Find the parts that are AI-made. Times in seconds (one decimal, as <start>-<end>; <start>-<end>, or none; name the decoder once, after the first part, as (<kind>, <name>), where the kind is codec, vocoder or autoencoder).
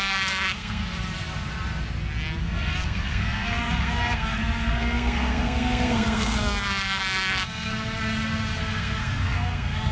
0.0-0.8 (codec, SNAC); 2.4-7.7; 8.6-9.9